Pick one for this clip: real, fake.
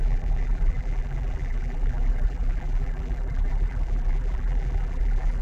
fake